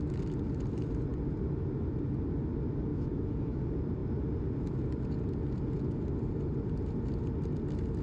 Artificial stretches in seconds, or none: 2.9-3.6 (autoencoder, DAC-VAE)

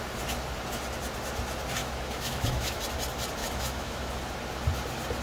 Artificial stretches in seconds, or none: 1.8-2.8 (autoencoder, DAC-VAE); 3.4-4.1

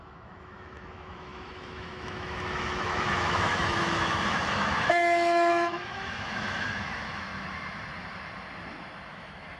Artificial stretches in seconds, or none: 0.0-7.3 (autoencoder, DAC-VAE); 9.1-9.6